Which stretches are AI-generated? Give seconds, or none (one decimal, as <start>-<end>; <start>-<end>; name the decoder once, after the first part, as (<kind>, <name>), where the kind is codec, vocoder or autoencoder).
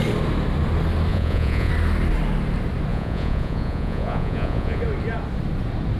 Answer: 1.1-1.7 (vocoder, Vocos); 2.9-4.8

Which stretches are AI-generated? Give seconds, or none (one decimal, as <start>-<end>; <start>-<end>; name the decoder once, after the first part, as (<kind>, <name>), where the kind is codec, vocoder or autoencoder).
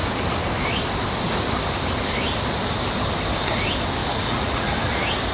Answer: 4.0-4.7 (vocoder, Vocos)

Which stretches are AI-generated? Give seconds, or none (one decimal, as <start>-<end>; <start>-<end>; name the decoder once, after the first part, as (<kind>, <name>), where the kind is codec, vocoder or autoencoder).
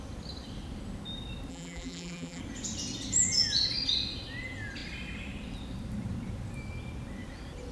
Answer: 1.5-2.4 (vocoder, BigVGAN v2)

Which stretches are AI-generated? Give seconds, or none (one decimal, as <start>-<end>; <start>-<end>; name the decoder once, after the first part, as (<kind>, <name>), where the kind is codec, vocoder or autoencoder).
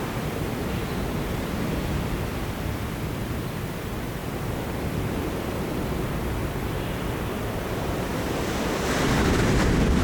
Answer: 0.0-8.1 (vocoder, BigVGAN v2); 8.6-10.0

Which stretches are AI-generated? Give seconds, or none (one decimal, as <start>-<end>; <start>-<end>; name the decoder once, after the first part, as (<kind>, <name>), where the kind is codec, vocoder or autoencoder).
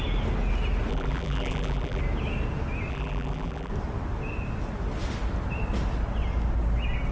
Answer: 0.9-2.0 (vocoder, BigVGAN v2); 2.9-3.7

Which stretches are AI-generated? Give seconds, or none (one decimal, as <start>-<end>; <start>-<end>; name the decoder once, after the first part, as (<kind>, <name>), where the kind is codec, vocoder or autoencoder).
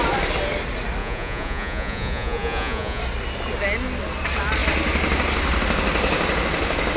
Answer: 1.0-3.0 (vocoder, Vocos)